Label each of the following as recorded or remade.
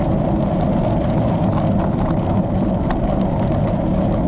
recorded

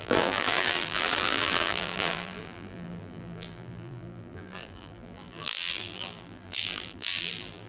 remade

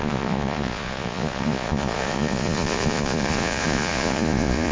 remade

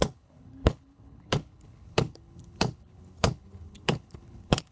remade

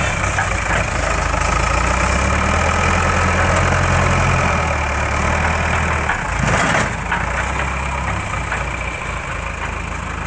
recorded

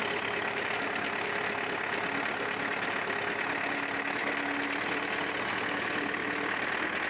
recorded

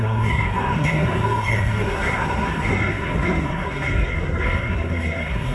remade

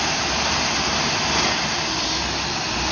recorded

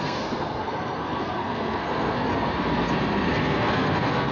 remade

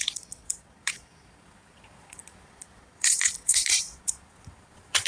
remade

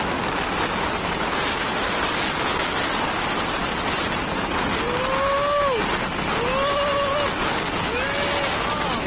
recorded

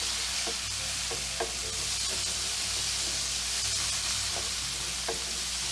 recorded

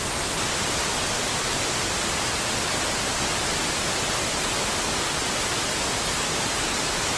recorded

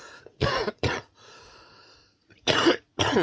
remade